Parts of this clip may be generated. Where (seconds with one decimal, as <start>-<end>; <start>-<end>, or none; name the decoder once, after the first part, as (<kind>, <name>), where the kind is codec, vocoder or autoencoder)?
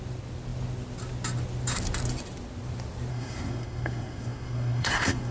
3.1-5.3 (codec, SNAC)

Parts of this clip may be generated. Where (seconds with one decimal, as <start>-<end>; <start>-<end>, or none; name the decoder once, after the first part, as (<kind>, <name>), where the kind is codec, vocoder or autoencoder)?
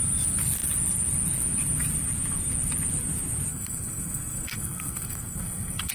3.5-5.9 (codec, SNAC)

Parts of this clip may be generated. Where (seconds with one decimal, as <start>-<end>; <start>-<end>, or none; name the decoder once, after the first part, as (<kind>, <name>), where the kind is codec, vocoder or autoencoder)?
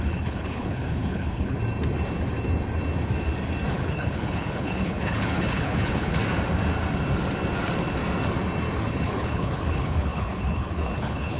0.0-1.6 (codec, HILCodec); 3.7-6.2; 8.9-11.4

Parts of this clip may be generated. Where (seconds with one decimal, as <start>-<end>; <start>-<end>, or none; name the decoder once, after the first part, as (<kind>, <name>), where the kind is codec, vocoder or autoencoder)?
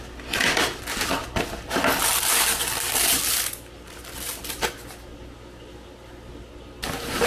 none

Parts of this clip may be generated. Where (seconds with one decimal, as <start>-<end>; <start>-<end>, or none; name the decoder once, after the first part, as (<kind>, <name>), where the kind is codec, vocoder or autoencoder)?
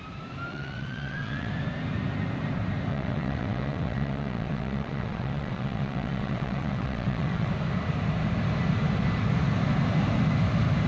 0.5-1.5 (vocoder, WaveNeXt); 2.9-7.5